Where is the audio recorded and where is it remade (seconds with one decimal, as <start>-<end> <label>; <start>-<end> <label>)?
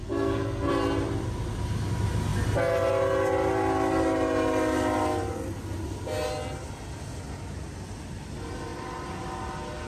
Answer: 0.0-0.7 remade; 0.7-9.9 recorded